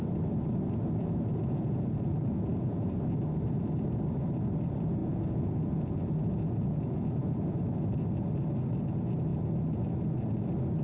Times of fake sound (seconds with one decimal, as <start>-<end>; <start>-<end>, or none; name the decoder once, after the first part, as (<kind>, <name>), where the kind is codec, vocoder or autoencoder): 1.4-2.9 (vocoder, Vocos); 5.0-7.6